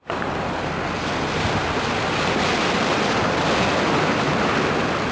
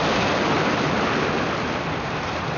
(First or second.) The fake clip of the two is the second